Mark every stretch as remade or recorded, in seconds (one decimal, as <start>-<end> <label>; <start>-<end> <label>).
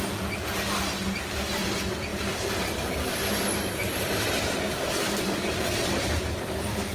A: 0.0-2.1 recorded; 2.1-6.2 remade; 6.2-6.9 recorded